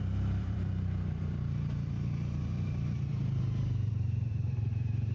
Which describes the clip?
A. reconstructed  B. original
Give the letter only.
A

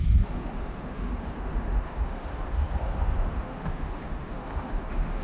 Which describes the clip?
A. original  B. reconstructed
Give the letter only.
B